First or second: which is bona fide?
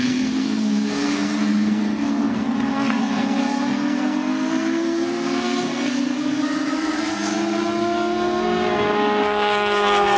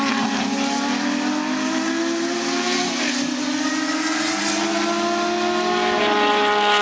second